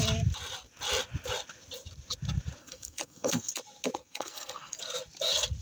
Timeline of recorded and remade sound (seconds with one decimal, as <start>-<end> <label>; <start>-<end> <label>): 0.0-2.6 recorded; 2.6-3.5 remade; 3.5-4.0 recorded; 4.0-4.8 remade; 4.8-5.6 recorded